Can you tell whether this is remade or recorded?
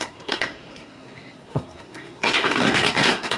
remade